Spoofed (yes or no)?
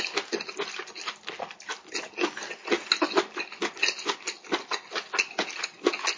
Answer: no